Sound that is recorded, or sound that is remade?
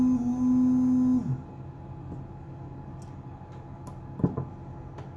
recorded